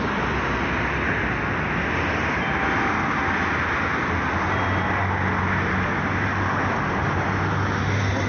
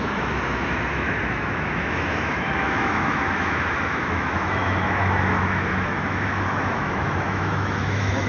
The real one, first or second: first